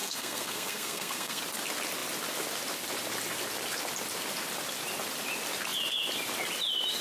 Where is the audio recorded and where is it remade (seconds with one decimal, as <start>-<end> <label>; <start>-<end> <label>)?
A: 0.0-1.4 remade; 1.4-7.0 recorded